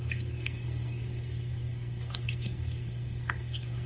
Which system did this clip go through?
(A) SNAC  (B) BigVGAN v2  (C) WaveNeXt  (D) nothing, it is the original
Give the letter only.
A